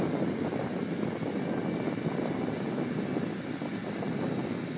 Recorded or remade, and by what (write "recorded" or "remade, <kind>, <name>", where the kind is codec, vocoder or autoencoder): recorded